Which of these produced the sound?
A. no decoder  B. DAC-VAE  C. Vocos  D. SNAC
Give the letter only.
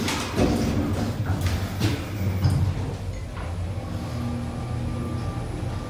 A